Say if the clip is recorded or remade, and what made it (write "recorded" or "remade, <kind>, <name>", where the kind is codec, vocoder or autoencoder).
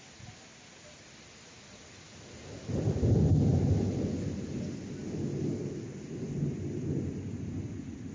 recorded